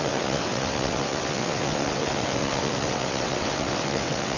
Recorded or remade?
remade